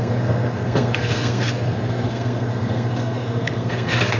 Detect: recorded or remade remade